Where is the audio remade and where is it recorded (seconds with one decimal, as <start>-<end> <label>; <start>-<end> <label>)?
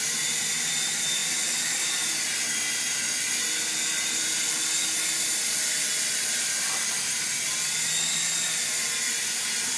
0.0-9.8 recorded